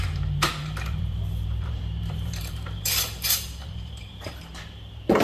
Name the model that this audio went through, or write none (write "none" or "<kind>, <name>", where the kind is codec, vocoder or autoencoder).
vocoder, BigVGAN v2